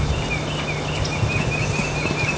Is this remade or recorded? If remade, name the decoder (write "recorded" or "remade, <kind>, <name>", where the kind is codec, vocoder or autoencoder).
recorded